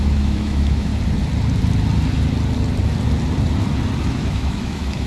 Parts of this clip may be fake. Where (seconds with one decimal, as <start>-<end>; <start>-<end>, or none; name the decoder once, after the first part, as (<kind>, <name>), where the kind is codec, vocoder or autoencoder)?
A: 0.0-0.9 (autoencoder, DAC-VAE); 4.0-5.1